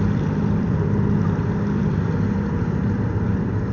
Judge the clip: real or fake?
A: fake